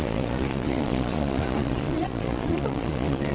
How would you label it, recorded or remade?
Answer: remade